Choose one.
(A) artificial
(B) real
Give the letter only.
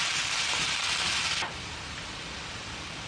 B